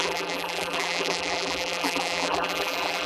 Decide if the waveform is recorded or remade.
remade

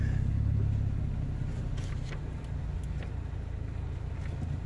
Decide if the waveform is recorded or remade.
recorded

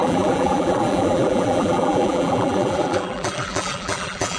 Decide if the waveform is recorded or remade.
remade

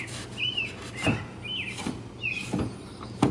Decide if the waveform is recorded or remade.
recorded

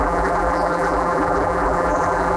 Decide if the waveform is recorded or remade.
remade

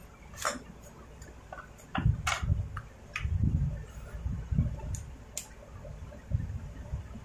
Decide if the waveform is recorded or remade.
recorded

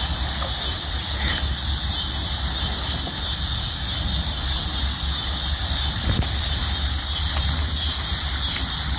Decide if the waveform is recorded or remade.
recorded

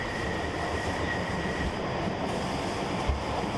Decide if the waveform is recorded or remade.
remade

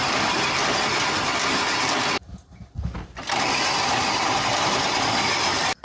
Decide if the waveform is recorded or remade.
remade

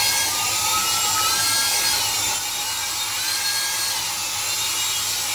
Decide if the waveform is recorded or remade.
recorded